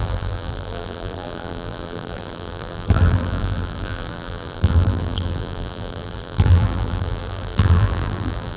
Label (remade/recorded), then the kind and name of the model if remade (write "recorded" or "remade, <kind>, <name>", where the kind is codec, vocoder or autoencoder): remade, vocoder, BigVGAN v2